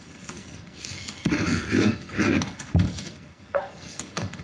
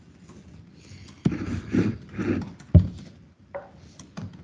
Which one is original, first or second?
second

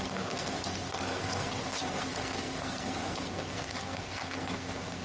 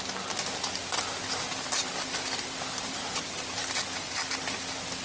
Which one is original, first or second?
second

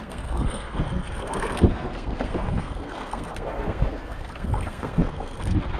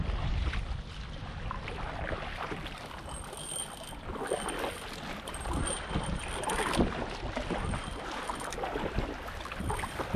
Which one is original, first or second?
second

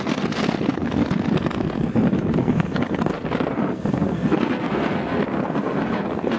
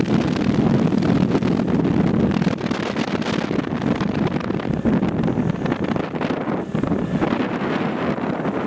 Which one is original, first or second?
second